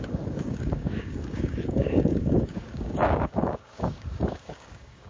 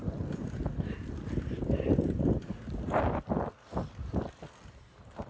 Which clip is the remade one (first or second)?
first